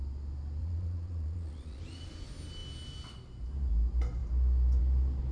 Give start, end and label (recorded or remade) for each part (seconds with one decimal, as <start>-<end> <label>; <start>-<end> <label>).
0.0-0.6 recorded; 0.6-1.8 remade; 1.8-5.3 recorded